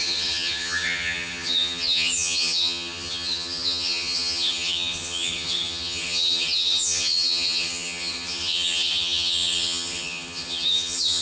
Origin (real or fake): fake